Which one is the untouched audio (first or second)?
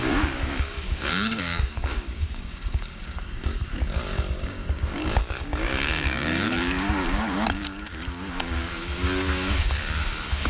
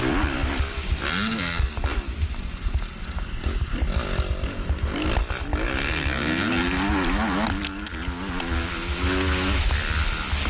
second